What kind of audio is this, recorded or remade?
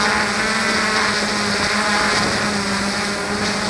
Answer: recorded